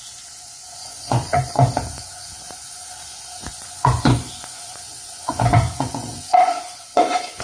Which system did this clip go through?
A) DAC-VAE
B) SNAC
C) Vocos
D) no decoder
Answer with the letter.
C